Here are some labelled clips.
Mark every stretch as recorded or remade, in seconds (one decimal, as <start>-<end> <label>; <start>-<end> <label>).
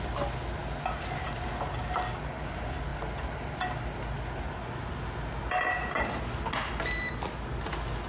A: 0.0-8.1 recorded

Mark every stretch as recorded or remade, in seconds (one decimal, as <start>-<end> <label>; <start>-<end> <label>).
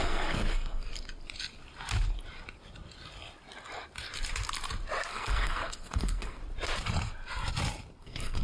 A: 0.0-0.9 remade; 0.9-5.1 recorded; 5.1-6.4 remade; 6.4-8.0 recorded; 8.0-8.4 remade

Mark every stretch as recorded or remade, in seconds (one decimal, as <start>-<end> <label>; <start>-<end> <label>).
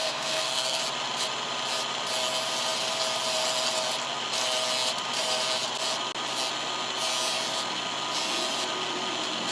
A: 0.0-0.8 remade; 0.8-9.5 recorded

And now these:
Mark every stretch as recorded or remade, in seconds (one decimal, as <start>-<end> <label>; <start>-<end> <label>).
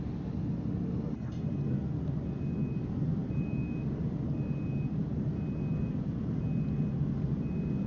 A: 0.0-7.9 recorded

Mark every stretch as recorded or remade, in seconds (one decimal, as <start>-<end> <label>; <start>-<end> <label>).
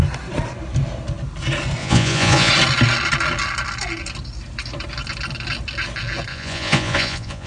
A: 0.0-1.8 recorded; 1.8-2.5 remade; 2.5-6.3 recorded; 6.3-7.5 remade